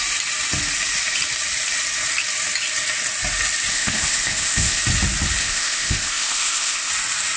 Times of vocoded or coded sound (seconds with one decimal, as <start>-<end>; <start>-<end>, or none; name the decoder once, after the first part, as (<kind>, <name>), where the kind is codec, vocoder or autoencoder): 3.7-4.8 (codec, ZipCodec); 5.4-6.9

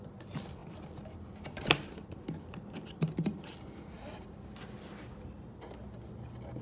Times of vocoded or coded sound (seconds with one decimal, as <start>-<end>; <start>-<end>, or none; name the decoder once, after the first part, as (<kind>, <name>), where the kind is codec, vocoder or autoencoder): none

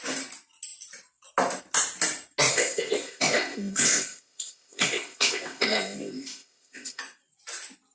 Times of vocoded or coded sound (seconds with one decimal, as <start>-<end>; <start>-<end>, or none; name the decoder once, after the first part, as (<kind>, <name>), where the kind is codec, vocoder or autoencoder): 2.5-7.0 (codec, ZipCodec)